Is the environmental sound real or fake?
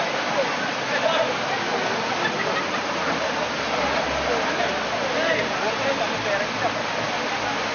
real